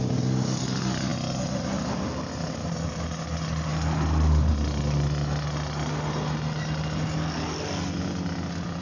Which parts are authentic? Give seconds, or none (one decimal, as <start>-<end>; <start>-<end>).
0.0-8.8